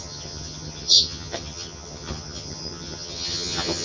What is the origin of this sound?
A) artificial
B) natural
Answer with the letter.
A